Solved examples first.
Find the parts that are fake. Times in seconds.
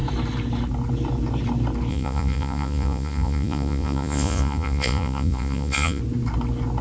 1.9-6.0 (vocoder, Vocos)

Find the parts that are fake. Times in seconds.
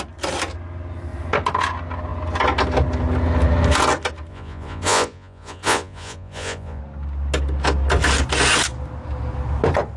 4.3-6.8 (vocoder, Vocos)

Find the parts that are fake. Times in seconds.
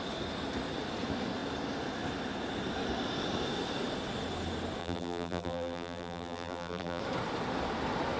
4.8-7.0 (vocoder, BigVGAN v2)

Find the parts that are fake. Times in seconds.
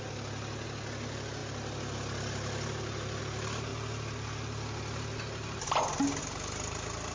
none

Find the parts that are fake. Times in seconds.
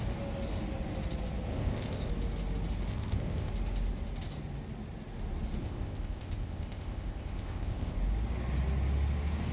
1.5-2.1 (codec, ZipCodec); 2.9-3.5; 5.6-8.0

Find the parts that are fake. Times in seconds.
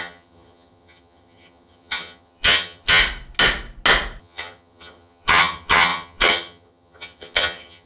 0.0-3.0 (vocoder, HiFi-GAN); 4.2-7.9